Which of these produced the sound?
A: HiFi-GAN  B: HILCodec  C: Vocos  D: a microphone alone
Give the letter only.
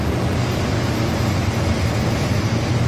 D